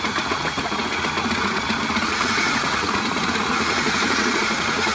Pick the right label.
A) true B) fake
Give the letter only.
B